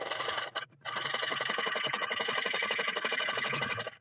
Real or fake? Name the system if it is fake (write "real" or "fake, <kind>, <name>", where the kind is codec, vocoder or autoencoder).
fake, vocoder, Vocos